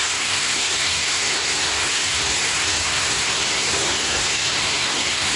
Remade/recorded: remade